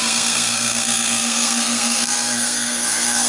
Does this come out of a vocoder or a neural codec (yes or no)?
yes